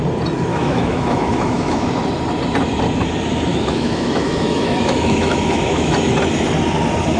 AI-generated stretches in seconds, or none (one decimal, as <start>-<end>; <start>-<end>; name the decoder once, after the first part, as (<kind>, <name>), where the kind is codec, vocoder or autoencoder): 0.5-1.9 (autoencoder, DAC-VAE); 3.5-5.9